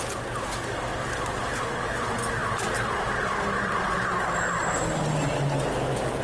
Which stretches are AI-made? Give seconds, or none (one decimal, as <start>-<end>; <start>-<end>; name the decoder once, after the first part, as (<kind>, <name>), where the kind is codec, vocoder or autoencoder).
none